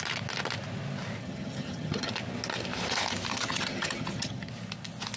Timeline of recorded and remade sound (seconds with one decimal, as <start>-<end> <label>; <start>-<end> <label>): 0.0-1.2 recorded; 1.2-2.1 remade; 2.1-3.3 recorded; 3.3-4.5 remade; 4.5-5.2 recorded